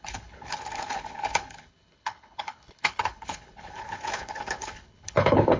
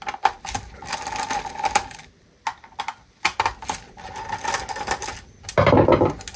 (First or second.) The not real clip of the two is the first